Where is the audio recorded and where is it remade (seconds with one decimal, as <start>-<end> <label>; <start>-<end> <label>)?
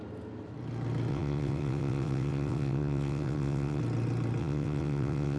0.0-1.1 recorded; 1.1-3.8 remade; 3.8-4.4 recorded; 4.4-5.4 remade